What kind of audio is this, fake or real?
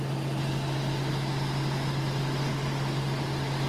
real